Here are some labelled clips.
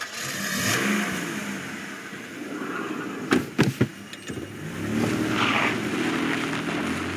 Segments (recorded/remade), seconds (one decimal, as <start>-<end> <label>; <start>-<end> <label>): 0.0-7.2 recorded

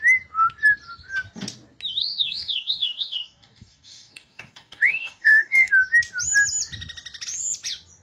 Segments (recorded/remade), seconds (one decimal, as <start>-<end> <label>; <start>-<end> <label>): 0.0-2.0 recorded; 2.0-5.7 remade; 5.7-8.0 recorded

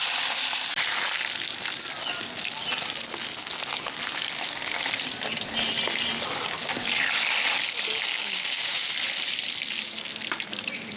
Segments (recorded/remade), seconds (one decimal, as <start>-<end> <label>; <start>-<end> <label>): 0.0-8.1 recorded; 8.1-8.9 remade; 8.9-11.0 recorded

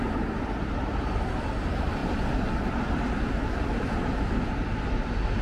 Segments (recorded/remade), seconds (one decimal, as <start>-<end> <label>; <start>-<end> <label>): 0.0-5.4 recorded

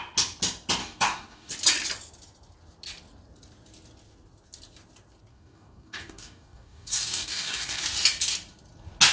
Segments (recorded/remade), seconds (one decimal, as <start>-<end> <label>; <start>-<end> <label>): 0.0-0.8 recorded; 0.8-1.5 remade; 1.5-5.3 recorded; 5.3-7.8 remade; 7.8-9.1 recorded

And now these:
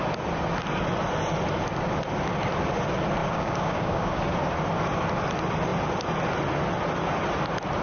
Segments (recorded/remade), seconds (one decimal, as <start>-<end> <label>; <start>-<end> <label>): 0.0-3.2 recorded; 3.2-4.2 remade; 4.2-7.8 recorded

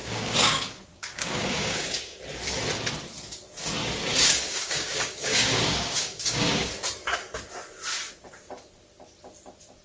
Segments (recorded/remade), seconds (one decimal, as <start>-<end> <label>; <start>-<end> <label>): 0.0-2.2 remade; 2.2-4.1 recorded; 4.1-6.7 remade; 6.7-9.8 recorded